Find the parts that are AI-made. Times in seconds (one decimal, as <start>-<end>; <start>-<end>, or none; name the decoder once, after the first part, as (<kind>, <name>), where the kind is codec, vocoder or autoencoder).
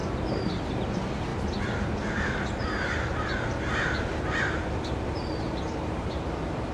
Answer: 0.0-0.9 (vocoder, BigVGAN v2); 1.3-2.3; 4.1-6.1